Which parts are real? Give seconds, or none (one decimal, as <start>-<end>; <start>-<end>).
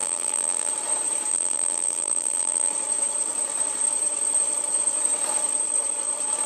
0.7-1.3; 2.7-6.5